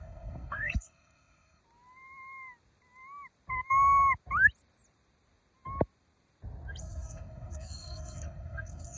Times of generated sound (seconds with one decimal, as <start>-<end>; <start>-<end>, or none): 0.0-1.6; 6.8-9.0